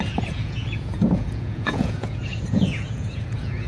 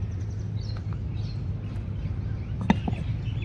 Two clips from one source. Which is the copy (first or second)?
first